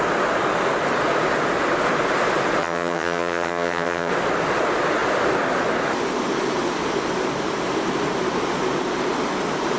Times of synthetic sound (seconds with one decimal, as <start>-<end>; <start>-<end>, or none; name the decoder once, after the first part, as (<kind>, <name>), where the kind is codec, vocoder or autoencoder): 2.6-4.1 (vocoder, HiFi-GAN)